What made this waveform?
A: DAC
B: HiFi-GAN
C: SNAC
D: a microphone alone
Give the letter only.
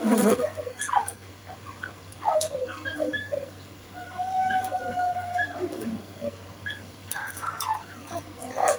C